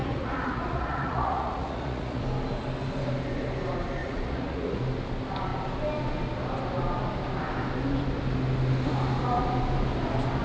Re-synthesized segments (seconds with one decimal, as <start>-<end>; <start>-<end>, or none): 0.0-2.2; 4.0-4.8